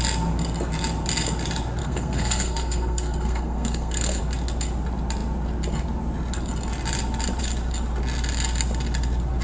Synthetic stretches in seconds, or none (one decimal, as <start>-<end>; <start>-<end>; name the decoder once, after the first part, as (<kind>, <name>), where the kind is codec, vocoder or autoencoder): 1.8-4.2 (codec, SNAC)